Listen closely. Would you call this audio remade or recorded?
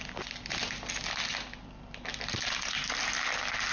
recorded